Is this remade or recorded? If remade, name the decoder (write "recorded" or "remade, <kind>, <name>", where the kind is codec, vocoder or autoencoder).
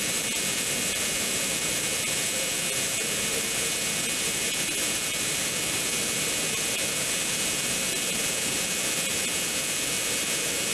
remade, vocoder, BigVGAN v2